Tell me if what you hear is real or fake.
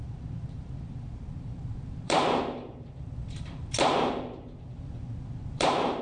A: fake